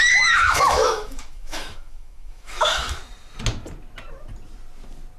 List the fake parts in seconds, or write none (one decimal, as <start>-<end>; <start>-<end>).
0.0-3.0